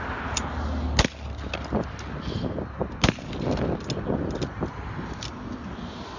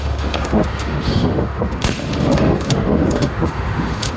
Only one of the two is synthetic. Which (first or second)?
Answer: second